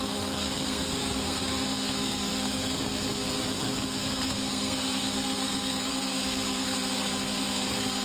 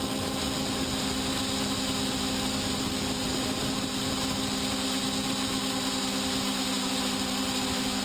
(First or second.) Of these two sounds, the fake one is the first